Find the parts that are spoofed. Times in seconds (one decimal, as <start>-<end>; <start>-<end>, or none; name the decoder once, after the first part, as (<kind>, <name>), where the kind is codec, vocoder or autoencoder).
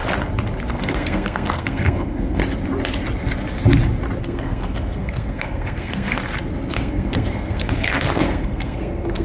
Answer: 0.7-2.4 (codec, SNAC); 4.2-6.2; 6.7-9.2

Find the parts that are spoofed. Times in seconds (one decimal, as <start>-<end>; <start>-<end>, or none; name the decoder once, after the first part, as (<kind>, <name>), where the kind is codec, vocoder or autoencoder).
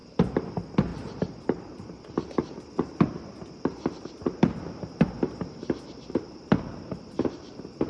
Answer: 0.0-0.5 (vocoder, BigVGAN v2); 0.9-2.9; 3.4-7.9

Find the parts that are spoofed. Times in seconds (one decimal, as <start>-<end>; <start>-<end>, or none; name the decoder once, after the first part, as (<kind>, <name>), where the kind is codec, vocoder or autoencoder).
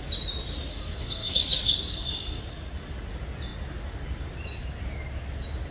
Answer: 0.7-2.4 (codec, SNAC)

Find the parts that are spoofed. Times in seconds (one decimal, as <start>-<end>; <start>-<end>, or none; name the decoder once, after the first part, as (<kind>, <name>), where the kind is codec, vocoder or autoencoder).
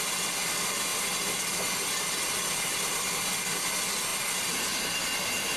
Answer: none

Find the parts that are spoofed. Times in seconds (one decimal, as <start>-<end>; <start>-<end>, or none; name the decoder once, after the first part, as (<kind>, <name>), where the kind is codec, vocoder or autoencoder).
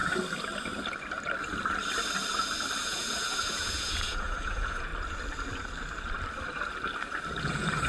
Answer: 2.8-4.9 (vocoder, Vocos); 7.4-7.9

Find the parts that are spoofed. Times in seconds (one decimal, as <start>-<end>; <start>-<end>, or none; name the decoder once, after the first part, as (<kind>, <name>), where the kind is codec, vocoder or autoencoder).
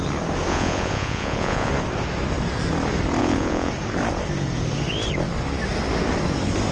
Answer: 0.5-1.7 (vocoder, Vocos); 3.2-3.7